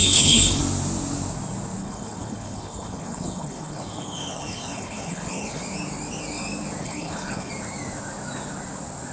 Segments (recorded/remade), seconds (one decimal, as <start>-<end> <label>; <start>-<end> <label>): 0.0-0.6 remade; 0.6-1.8 recorded; 1.8-5.6 remade; 5.6-6.8 recorded; 6.8-7.5 remade; 7.5-9.1 recorded